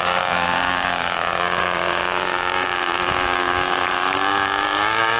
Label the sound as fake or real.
fake